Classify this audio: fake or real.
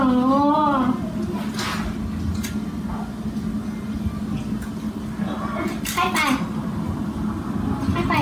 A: real